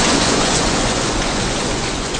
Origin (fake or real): fake